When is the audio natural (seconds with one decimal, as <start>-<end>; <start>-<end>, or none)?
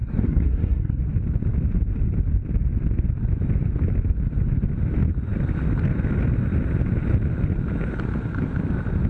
1.0-9.1